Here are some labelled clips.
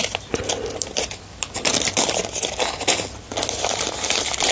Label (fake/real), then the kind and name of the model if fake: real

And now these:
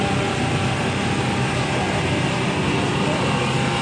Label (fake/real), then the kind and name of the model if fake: real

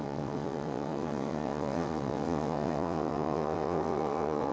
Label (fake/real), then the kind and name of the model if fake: fake, vocoder, WaveNeXt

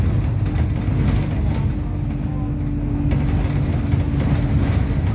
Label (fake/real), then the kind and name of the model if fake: real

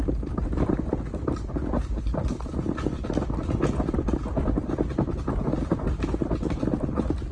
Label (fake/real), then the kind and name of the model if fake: real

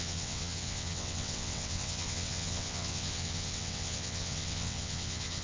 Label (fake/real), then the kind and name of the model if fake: fake, vocoder, WaveNeXt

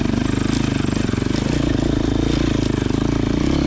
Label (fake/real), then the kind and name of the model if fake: real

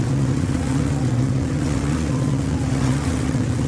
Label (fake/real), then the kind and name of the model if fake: fake, vocoder, WaveNeXt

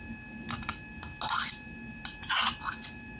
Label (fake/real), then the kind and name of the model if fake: real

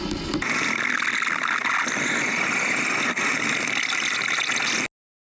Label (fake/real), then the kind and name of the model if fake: real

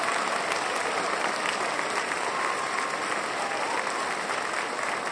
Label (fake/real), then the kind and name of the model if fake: real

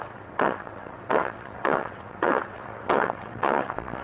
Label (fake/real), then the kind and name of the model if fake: fake, vocoder, WaveNeXt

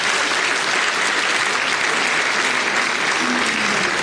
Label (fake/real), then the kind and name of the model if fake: real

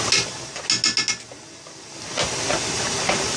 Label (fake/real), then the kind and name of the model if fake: real